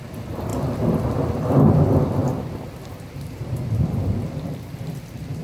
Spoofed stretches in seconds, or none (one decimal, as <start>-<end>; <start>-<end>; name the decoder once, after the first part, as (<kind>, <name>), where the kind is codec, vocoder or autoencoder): 0.5-1.6 (vocoder, BigVGAN v2); 2.2-5.4